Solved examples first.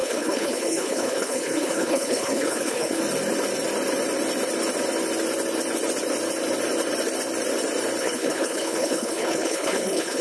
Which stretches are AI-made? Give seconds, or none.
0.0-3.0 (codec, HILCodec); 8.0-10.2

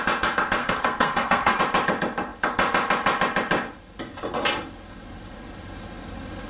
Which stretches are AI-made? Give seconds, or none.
0.6-1.6 (codec, SNAC)

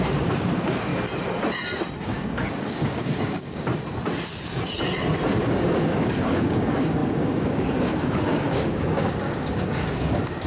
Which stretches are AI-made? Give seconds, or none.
0.0-0.9 (codec, DAC); 2.0-3.7; 5.4-10.5

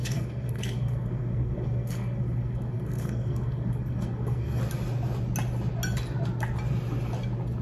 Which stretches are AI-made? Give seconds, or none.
0.0-4.6 (codec, SNAC)

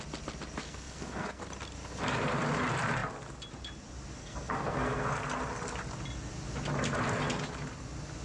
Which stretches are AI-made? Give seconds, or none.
0.6-1.4 (codec, SNAC); 4.2-5.1

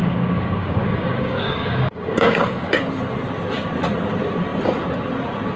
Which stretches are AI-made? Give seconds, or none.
0.0-2.8 (codec, DAC)

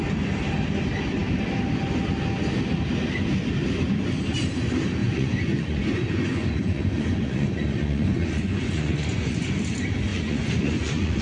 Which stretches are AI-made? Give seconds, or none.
5.0-9.5 (vocoder, Vocos); 10.1-11.2